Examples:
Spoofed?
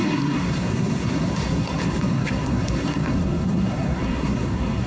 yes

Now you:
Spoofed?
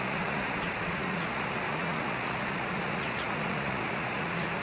yes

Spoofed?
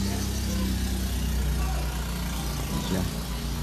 no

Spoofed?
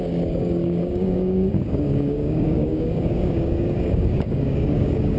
yes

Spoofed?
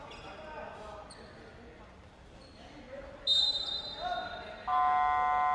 no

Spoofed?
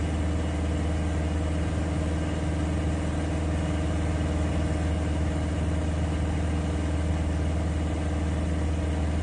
no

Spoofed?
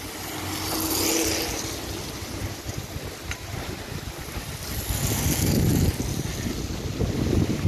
no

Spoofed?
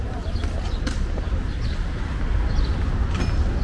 no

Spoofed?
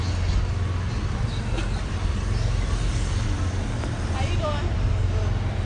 no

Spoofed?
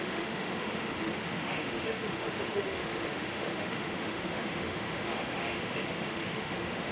yes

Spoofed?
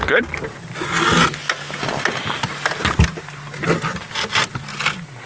no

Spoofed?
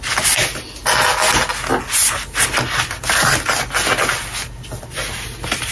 no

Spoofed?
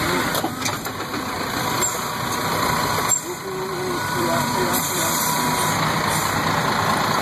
yes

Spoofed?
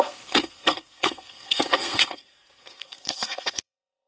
yes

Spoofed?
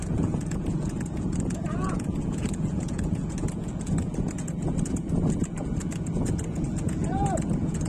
yes